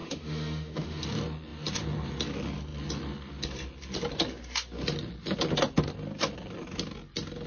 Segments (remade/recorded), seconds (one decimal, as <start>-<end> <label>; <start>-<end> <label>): 0.0-1.0 remade; 1.0-7.5 recorded